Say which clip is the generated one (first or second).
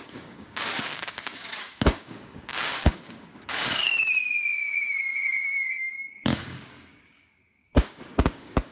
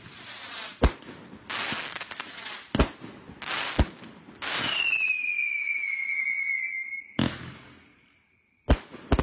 first